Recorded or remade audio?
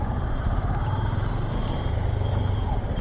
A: remade